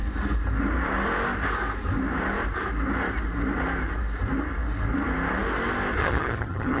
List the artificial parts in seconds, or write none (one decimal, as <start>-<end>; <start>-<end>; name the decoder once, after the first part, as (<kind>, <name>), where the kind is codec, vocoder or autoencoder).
6.0-6.8 (vocoder, HiFi-GAN)